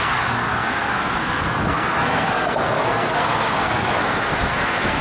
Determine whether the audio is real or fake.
fake